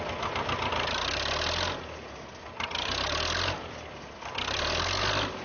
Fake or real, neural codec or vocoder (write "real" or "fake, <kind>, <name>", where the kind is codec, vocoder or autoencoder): real